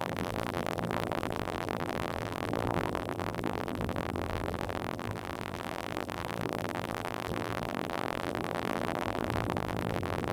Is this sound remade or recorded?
remade